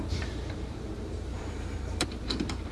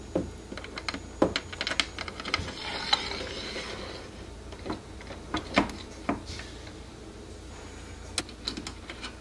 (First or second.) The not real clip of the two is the first